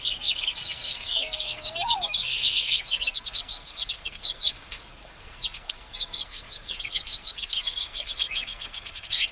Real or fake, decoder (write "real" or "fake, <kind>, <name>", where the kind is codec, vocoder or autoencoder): fake, codec, SNAC